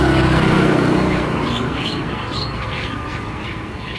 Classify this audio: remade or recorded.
remade